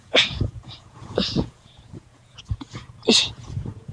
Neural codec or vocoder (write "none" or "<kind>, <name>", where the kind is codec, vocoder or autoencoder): vocoder, Vocos